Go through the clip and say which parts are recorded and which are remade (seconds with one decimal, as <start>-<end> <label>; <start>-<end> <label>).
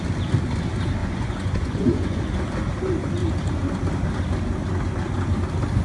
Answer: 0.0-1.0 recorded; 1.0-2.2 remade; 2.2-5.8 recorded